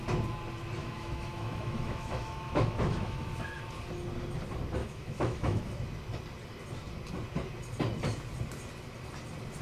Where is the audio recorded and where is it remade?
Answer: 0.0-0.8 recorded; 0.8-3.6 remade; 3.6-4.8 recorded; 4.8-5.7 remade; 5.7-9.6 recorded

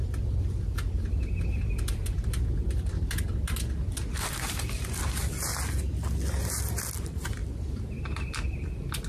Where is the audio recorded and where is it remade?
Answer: 0.0-9.1 recorded

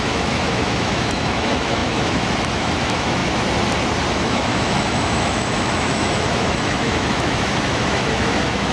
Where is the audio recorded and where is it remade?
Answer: 0.0-3.2 remade; 3.2-4.1 recorded; 4.1-8.7 remade

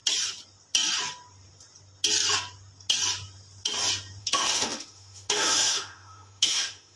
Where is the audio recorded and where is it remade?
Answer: 0.0-4.2 recorded; 4.2-7.0 remade